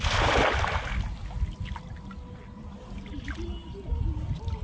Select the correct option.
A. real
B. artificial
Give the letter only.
A